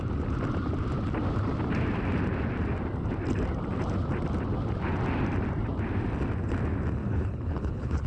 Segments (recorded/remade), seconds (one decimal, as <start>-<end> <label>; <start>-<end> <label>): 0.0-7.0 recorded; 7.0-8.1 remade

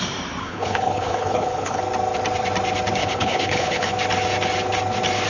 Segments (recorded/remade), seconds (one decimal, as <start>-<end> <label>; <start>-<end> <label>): 0.0-0.4 recorded; 0.4-1.8 remade; 1.8-3.0 recorded; 3.0-3.9 remade; 3.9-5.3 recorded

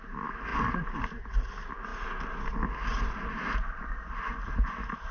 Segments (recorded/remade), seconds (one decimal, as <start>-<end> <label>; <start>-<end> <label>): 0.0-5.1 recorded

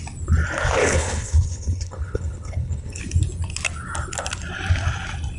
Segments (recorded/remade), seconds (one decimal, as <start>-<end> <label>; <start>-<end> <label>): 0.0-0.8 recorded; 0.8-3.0 remade; 3.0-5.4 recorded

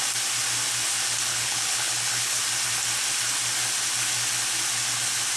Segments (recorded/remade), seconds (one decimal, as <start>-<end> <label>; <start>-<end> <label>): 0.0-1.3 recorded; 1.3-2.4 remade; 2.4-5.4 recorded

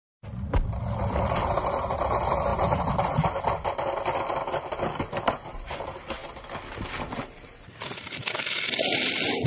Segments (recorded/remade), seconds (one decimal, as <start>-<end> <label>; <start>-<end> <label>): 0.0-9.5 recorded

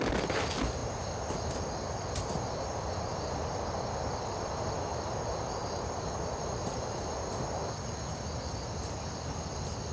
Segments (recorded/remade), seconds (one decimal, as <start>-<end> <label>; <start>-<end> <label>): 0.0-9.9 recorded

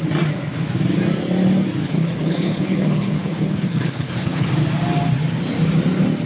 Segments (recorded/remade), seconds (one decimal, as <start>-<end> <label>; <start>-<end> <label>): 0.0-1.8 recorded; 1.8-4.5 remade; 4.5-6.3 recorded